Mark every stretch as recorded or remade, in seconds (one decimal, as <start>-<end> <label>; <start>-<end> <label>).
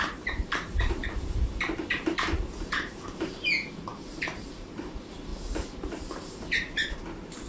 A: 0.0-5.3 remade; 5.3-6.8 recorded; 6.8-7.5 remade